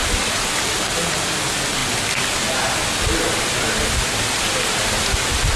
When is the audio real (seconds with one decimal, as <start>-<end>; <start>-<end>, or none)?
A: 0.0-5.6